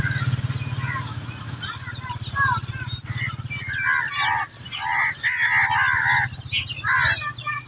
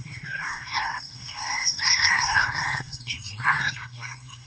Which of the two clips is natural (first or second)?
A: first